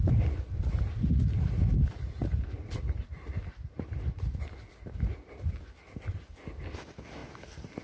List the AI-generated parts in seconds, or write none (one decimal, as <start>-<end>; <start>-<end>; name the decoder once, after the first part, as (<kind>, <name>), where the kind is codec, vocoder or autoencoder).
none